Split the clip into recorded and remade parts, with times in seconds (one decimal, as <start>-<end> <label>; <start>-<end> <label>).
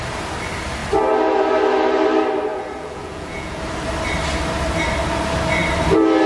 0.0-2.5 recorded; 2.5-3.6 remade; 3.6-6.3 recorded